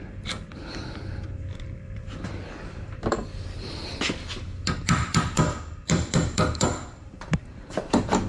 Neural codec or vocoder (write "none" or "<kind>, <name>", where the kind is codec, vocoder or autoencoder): vocoder, BigVGAN v2